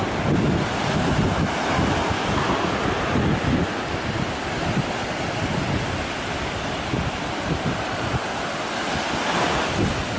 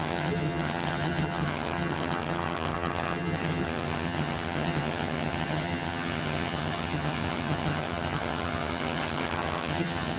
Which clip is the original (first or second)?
first